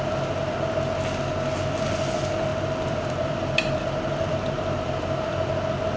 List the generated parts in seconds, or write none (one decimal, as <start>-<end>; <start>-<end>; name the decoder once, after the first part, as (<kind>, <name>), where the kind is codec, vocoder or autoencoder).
2.5-5.5 (vocoder, BigVGAN v2)